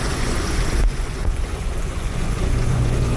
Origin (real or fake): fake